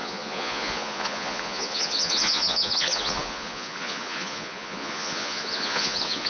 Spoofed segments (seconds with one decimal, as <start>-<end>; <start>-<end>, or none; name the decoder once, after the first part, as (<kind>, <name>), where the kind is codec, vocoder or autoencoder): 0.0-6.3 (vocoder, Vocos)